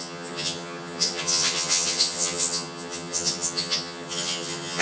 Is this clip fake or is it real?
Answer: fake